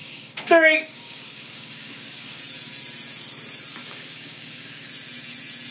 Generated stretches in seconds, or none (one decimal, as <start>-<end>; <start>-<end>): 0.0-2.4; 3.8-4.9